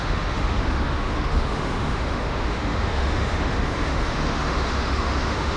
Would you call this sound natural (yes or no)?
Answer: no